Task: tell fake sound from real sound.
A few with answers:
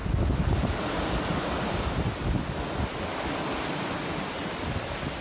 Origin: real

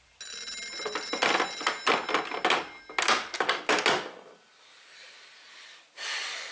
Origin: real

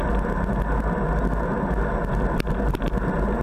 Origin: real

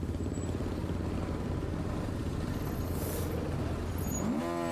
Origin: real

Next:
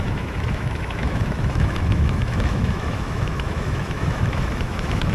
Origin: fake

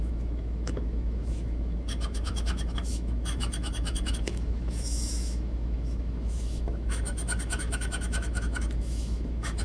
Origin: fake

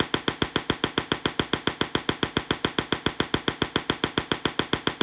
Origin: real